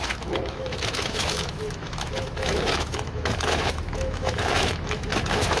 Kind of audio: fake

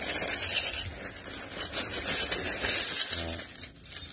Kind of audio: real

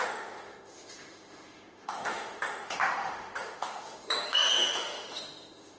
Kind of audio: fake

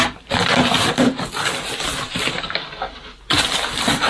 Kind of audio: real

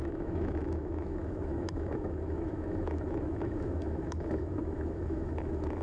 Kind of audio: fake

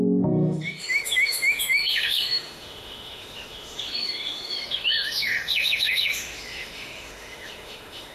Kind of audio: fake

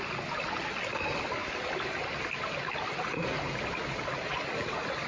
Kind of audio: real